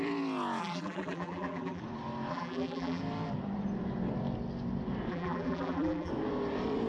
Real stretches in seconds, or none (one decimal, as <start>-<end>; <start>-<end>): 0.0-0.6; 1.8-2.3; 3.0-5.1; 6.1-6.9